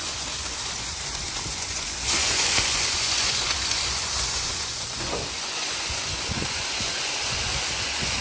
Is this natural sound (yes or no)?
no